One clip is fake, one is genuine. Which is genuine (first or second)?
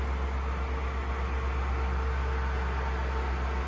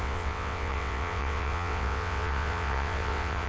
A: first